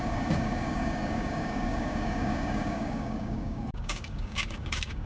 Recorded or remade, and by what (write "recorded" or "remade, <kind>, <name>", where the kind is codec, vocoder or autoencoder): remade, codec, DAC